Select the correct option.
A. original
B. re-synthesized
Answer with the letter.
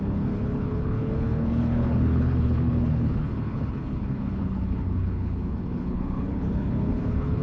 B